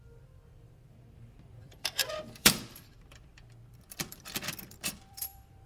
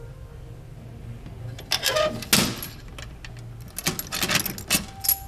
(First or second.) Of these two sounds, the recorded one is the second